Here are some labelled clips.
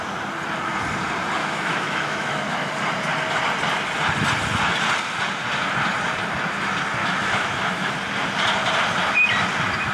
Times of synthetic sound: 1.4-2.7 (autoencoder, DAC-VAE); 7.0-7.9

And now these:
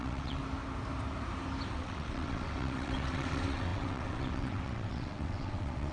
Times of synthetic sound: 0.0-0.4 (vocoder, WaveNeXt); 1.7-5.9

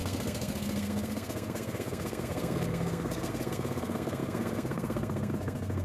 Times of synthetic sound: 0.0-5.8 (codec, SNAC)

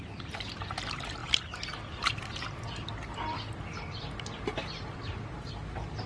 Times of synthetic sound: none

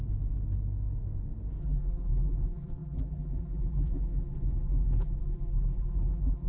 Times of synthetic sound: 1.6-6.5 (vocoder, BigVGAN v2)

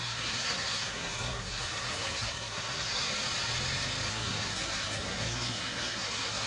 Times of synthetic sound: 0.0-3.1 (codec, SNAC); 4.1-6.5

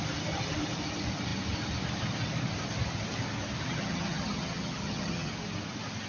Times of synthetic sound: 3.6-5.3 (vocoder, HiFi-GAN)

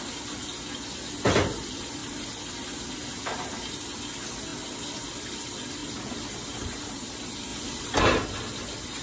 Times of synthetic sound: none